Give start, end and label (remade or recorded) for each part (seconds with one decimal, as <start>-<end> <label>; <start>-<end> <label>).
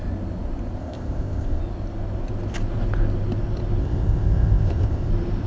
0.0-0.8 recorded; 0.8-1.6 remade; 1.6-3.8 recorded; 3.8-5.1 remade; 5.1-5.5 recorded